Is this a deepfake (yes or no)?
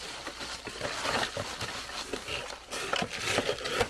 no